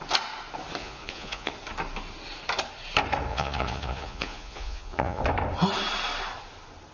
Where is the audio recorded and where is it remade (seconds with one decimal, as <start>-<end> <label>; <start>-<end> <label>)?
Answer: 0.0-0.8 recorded; 0.8-1.5 remade; 1.5-3.3 recorded; 3.3-5.2 remade; 5.2-6.9 recorded